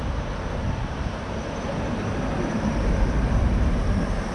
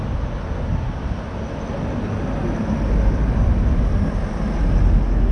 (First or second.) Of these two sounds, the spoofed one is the first